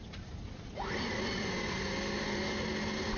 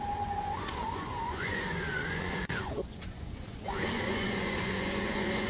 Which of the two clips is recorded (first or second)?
first